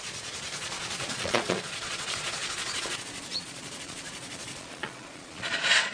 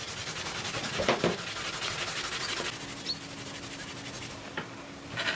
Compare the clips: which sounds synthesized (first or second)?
first